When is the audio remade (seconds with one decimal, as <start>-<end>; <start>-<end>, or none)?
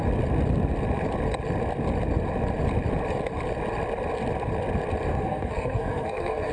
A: 5.1-6.5